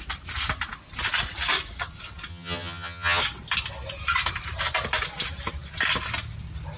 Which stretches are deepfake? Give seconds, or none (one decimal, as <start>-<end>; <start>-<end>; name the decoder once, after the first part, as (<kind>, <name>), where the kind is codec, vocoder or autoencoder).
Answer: 2.3-3.2 (vocoder, HiFi-GAN)

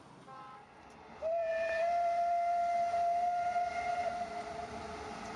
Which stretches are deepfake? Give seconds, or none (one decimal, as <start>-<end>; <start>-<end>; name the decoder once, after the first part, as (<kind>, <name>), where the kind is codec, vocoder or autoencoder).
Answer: none

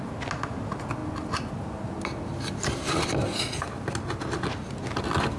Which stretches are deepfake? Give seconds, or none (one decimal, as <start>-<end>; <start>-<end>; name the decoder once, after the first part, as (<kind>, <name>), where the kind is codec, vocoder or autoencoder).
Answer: none

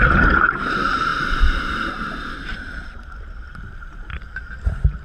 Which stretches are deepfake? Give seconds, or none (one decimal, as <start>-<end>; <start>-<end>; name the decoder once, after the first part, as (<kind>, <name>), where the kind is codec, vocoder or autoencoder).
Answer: 0.0-1.1 (vocoder, BigVGAN v2); 4.1-5.0

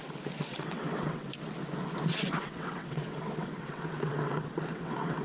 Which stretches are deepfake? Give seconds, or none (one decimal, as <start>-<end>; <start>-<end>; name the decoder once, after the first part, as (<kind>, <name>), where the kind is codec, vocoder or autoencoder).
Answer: 0.5-1.3 (vocoder, WaveNeXt); 2.1-5.2

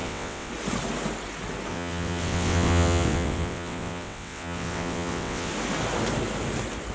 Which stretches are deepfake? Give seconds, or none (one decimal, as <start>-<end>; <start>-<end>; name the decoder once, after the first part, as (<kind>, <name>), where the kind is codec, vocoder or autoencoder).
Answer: 0.0-0.5 (vocoder, WaveNeXt); 1.7-5.5

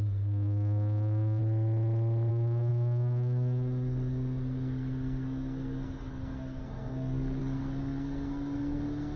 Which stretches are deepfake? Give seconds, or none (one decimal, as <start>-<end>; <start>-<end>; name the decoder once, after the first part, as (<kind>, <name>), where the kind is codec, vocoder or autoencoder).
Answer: 0.0-1.4 (codec, SNAC); 2.3-9.2

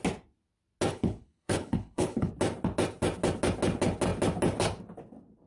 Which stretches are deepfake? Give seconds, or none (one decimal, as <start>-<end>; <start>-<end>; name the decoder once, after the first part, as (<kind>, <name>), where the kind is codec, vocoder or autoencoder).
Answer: 0.9-2.3 (codec, HILCodec)